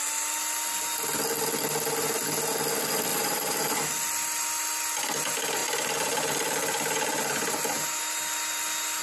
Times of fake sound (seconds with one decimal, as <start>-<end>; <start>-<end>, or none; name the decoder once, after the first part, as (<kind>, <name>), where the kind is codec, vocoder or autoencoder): 3.1-3.8 (vocoder, BigVGAN v2); 5.6-8.1